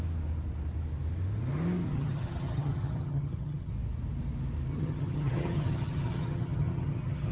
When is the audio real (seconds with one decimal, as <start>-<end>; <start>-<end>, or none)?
0.0-1.9; 3.7-4.7